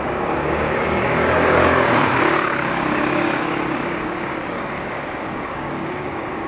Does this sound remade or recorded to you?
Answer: remade